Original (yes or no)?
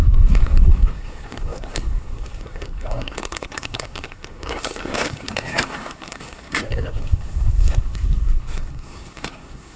no